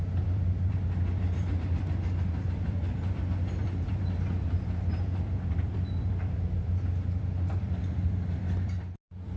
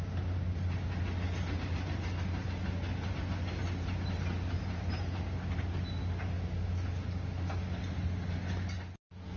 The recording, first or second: second